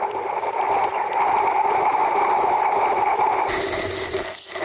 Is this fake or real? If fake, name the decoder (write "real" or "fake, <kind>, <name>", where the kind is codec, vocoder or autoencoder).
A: real